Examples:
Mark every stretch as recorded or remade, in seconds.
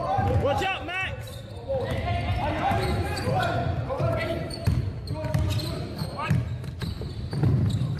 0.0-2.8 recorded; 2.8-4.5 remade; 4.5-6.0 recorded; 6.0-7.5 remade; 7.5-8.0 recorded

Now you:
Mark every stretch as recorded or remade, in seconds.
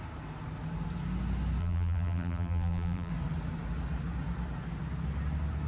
0.0-1.6 recorded; 1.6-3.1 remade; 3.1-5.7 recorded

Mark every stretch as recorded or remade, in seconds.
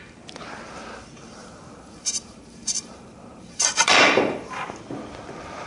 0.0-1.4 recorded; 1.4-4.8 remade; 4.8-5.7 recorded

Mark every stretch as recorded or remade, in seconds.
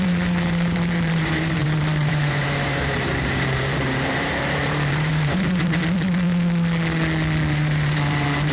0.0-5.8 remade; 5.8-7.5 recorded; 7.5-8.5 remade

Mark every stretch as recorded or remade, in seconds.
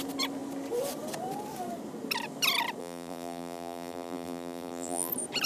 0.0-2.8 recorded; 2.8-5.1 remade; 5.1-5.5 recorded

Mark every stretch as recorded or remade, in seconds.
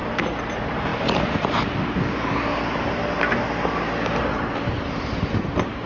0.0-0.5 recorded; 0.5-3.0 remade; 3.0-4.2 recorded; 4.2-5.9 remade